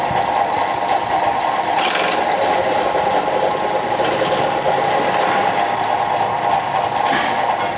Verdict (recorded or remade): remade